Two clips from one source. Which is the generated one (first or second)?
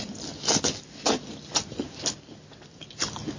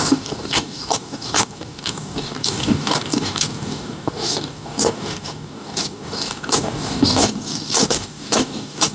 second